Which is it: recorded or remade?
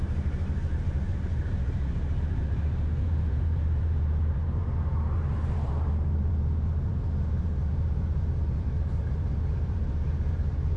remade